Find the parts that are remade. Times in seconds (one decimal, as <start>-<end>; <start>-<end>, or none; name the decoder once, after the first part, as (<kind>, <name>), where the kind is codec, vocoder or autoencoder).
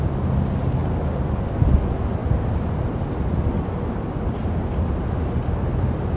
none